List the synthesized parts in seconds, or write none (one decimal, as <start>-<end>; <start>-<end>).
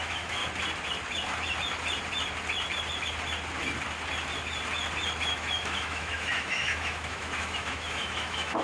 0.0-0.4; 5.2-8.6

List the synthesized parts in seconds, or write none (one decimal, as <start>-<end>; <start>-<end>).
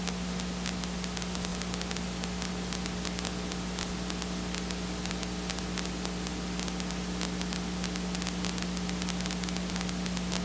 none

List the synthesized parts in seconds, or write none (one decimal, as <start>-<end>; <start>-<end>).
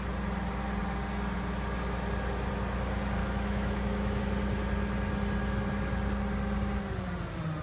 3.2-4.2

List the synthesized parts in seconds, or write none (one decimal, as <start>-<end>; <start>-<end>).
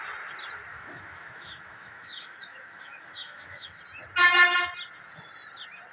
0.7-3.8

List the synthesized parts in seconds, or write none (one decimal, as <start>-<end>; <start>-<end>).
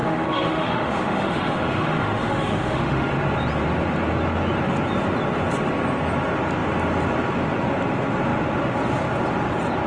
0.0-3.1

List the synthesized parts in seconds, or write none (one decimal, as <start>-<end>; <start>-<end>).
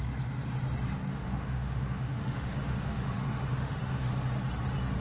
1.1-4.1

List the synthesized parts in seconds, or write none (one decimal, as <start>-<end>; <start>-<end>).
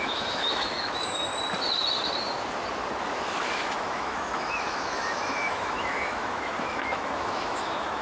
0.0-1.3; 3.2-8.0